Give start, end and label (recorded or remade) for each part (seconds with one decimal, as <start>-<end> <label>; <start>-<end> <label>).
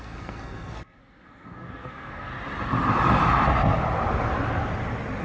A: 0.0-2.3 remade; 2.3-5.2 recorded